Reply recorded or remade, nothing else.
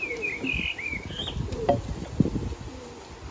recorded